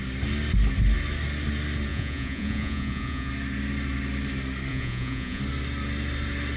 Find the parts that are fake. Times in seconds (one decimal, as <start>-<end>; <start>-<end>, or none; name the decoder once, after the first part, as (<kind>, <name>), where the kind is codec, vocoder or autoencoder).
1.9-3.3 (vocoder, Vocos); 4.7-5.4